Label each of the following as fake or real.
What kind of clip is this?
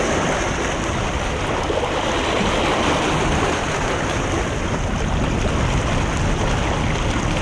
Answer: real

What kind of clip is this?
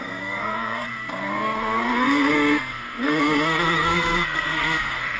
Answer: fake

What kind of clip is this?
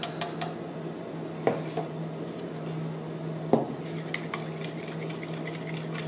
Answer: real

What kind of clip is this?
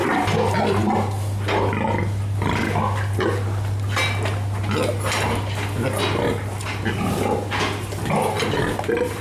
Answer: real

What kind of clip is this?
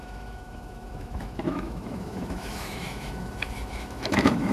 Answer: fake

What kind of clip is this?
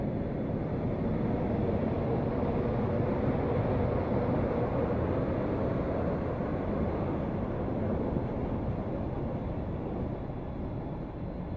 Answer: real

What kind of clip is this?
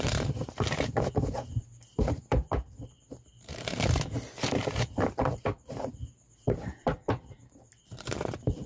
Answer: fake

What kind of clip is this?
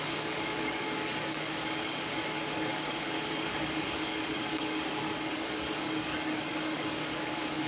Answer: fake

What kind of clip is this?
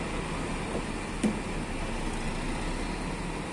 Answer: real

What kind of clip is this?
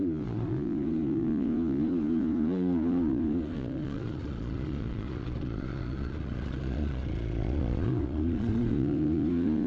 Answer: fake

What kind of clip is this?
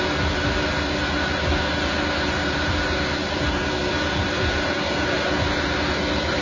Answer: real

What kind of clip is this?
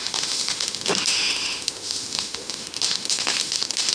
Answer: fake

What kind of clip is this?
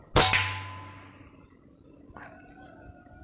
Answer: real